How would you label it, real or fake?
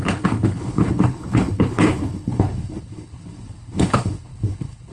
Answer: fake